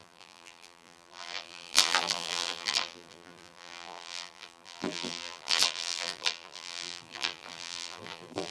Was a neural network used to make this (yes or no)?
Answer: yes